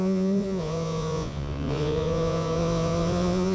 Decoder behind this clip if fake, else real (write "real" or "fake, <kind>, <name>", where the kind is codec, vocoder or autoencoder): fake, vocoder, Vocos